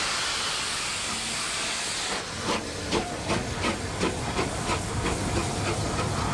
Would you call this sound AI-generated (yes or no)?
no